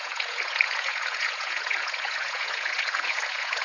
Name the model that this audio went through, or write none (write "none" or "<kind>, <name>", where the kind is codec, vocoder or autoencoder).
vocoder, Vocos